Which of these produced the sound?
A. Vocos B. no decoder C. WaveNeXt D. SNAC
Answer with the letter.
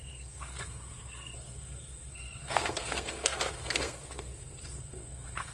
D